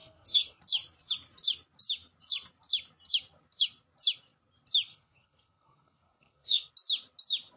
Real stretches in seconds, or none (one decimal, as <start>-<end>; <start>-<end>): 0.6-4.9; 6.7-7.6